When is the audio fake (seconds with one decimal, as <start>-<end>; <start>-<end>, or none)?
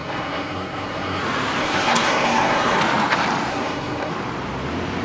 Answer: 0.0-1.2; 1.6-2.8; 3.5-4.1